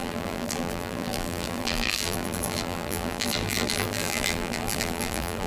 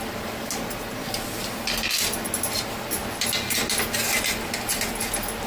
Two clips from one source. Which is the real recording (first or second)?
second